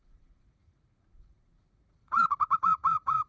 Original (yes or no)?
no